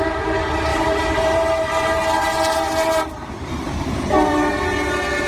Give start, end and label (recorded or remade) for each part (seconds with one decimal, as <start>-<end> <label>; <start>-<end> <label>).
0.0-0.7 recorded; 0.7-3.9 remade; 3.9-5.3 recorded